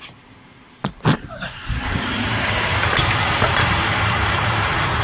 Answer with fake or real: fake